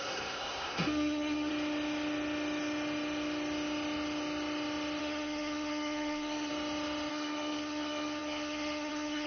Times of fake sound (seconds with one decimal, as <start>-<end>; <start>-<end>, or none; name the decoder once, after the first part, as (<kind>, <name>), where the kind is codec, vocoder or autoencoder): 0.0-1.5 (codec, SNAC); 5.0-6.5; 7.1-9.3